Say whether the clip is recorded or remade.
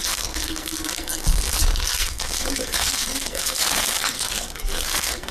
remade